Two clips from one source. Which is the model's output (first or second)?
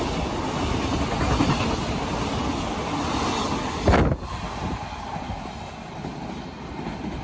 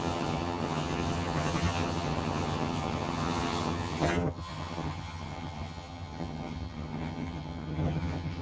second